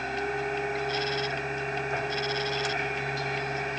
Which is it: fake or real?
real